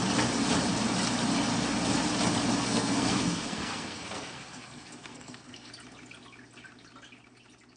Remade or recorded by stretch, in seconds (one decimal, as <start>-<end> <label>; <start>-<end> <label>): 0.0-2.6 recorded; 2.6-5.7 remade; 5.7-7.8 recorded